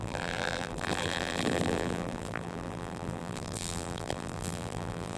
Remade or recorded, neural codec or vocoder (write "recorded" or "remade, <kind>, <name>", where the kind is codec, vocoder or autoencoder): remade, vocoder, BigVGAN v2